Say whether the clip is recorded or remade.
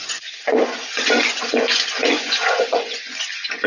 remade